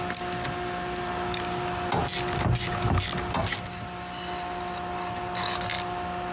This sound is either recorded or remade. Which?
recorded